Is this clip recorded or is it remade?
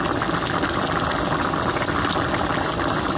recorded